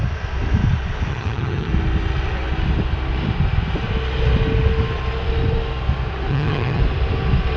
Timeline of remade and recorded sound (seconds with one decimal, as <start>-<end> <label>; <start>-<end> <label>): 0.0-1.1 recorded; 1.1-1.7 remade; 1.7-6.3 recorded; 6.3-6.8 remade; 6.8-7.6 recorded